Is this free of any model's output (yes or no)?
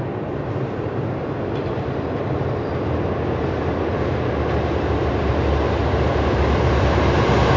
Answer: yes